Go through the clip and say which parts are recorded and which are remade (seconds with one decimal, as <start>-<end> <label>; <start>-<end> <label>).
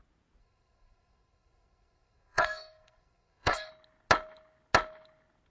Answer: 0.0-0.4 recorded; 0.4-3.7 remade; 3.7-5.5 recorded